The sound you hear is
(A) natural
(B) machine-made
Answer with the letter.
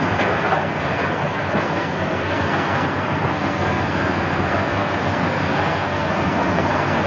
B